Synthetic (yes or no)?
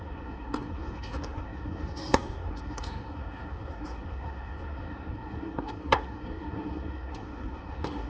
yes